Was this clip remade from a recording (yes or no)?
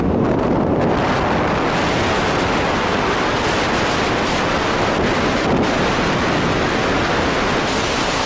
no